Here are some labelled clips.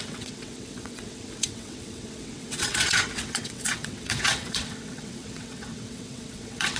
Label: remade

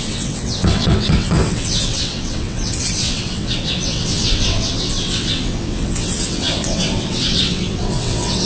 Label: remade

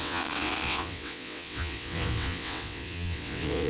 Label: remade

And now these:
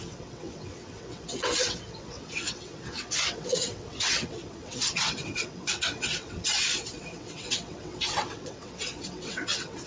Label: remade